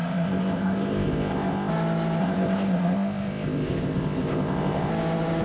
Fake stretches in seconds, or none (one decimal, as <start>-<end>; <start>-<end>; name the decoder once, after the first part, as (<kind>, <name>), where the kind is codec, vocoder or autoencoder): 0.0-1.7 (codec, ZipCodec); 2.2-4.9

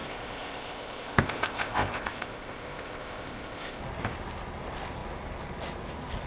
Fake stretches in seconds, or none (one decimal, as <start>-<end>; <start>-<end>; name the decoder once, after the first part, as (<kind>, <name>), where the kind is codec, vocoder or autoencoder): 0.0-3.8 (codec, ZipCodec)

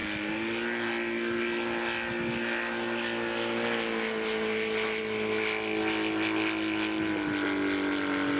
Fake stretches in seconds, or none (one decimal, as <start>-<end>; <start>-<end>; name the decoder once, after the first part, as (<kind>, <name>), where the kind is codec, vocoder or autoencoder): none

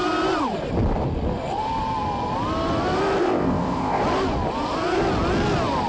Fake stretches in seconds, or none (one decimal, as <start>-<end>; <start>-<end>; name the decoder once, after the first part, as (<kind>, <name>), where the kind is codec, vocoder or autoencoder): 3.2-4.0 (codec, ZipCodec)

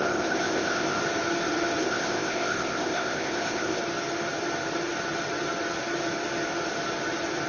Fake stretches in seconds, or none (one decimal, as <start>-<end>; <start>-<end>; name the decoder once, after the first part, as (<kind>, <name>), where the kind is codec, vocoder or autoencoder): 0.0-1.0 (codec, ZipCodec); 1.8-3.8